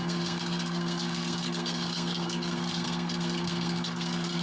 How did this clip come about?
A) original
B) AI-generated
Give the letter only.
B